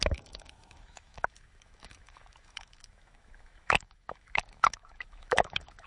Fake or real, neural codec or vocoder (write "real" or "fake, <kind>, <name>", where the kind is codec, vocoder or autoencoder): fake, autoencoder, DAC-VAE